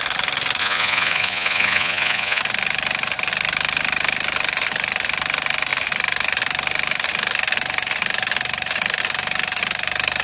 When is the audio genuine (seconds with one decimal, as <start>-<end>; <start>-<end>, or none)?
0.0-0.6; 2.4-10.2